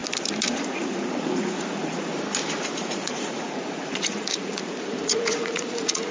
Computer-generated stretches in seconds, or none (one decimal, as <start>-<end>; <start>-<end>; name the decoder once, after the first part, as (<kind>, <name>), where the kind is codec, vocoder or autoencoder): 0.5-2.1 (vocoder, Vocos); 2.7-6.1